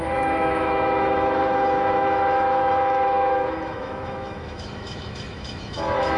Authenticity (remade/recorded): remade